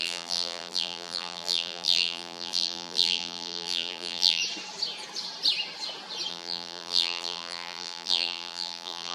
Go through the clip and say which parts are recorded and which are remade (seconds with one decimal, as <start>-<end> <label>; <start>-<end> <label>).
0.0-4.4 remade; 4.4-6.3 recorded; 6.3-9.1 remade

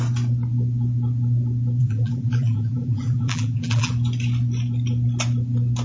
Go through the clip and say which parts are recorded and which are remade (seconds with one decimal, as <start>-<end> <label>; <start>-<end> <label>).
0.0-1.8 recorded; 1.8-3.9 remade; 3.9-5.8 recorded